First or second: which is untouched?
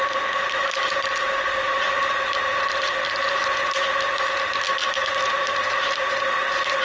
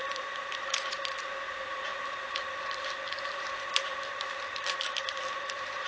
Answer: first